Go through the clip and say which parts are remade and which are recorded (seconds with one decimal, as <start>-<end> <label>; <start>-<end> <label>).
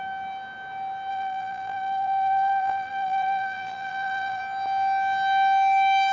0.0-1.1 recorded; 1.1-4.4 remade; 4.4-6.1 recorded